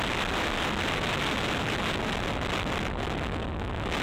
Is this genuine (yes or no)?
yes